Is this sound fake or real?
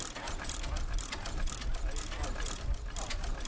real